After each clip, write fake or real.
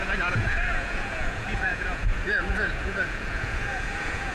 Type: fake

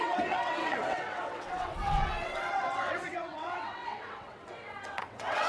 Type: fake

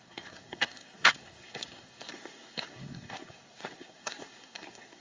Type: fake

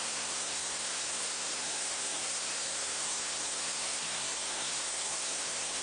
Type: fake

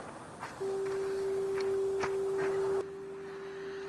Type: real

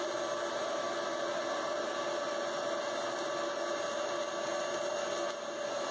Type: real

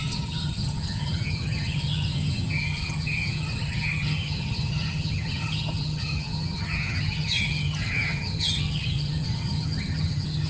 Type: fake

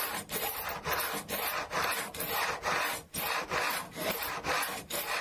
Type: fake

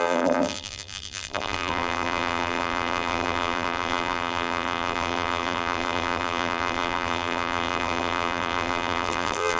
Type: fake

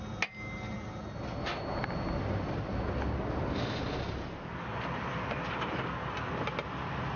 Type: real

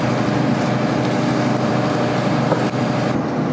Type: real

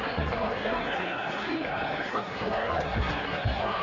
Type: fake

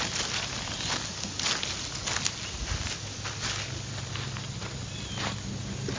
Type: real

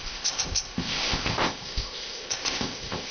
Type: fake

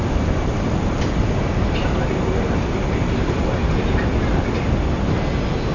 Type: real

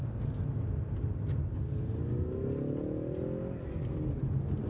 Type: real